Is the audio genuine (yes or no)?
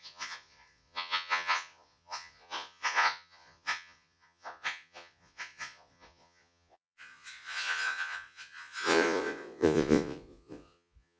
no